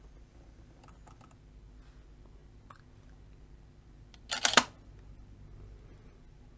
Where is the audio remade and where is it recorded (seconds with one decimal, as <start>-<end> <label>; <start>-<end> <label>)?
0.0-6.6 recorded